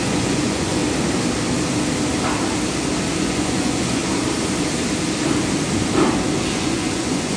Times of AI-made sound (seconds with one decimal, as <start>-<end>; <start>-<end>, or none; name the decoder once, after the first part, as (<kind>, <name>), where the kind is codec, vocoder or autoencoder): 0.0-0.8 (vocoder, Vocos); 3.2-4.0; 6.5-7.4